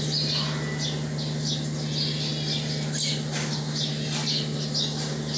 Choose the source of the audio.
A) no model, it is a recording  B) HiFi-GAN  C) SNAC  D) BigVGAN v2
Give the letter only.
A